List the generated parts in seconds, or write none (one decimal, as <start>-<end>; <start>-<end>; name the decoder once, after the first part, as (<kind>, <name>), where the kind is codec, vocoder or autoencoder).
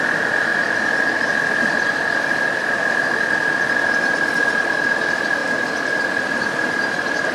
none